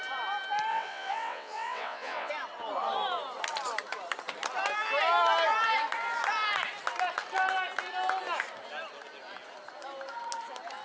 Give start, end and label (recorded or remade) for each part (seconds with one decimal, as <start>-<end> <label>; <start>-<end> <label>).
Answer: 0.0-0.7 recorded; 0.7-2.3 remade; 2.3-10.8 recorded